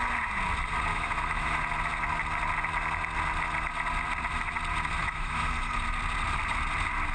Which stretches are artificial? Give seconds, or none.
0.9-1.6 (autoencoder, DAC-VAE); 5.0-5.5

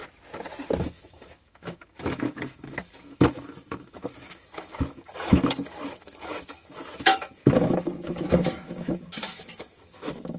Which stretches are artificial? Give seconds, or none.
0.8-10.4 (autoencoder, DAC-VAE)

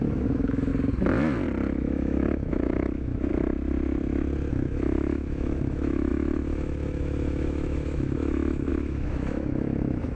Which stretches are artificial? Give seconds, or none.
0.0-0.7 (autoencoder, DAC-VAE); 1.8-3.3; 4.5-10.1

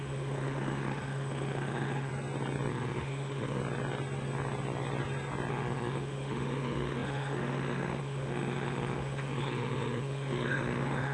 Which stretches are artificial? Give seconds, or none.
0.0-2.1 (autoencoder, DAC-VAE); 2.7-3.6; 5.5-11.1